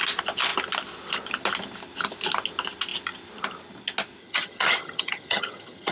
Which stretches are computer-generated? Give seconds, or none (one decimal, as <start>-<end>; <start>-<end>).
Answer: 4.2-5.9